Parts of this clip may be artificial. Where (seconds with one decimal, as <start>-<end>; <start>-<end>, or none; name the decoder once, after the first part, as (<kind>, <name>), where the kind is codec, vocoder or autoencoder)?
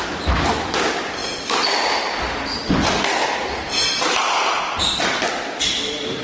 none